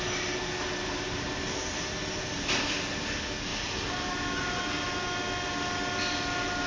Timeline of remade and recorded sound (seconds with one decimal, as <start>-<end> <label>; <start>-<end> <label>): 0.0-6.7 recorded